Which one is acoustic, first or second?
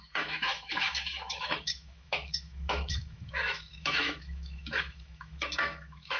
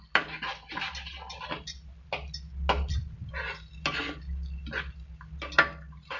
second